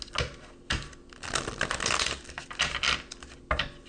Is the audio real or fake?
real